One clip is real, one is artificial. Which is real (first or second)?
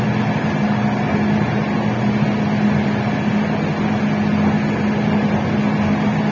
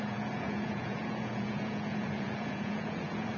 first